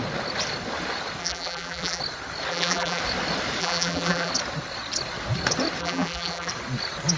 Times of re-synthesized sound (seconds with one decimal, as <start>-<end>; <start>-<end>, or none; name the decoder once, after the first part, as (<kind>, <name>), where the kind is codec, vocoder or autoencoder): 1.2-2.0 (vocoder, BigVGAN v2); 2.5-3.0; 3.6-4.3; 5.8-6.5